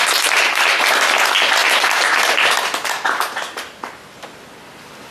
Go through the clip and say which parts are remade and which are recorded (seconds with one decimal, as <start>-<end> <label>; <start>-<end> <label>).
0.0-5.1 recorded